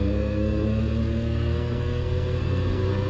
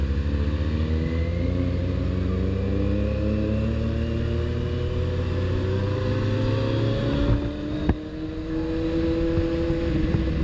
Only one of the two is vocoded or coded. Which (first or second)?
first